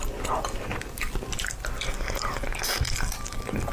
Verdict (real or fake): real